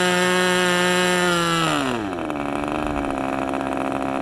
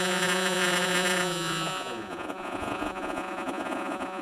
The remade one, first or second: second